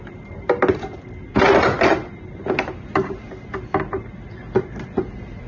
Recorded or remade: recorded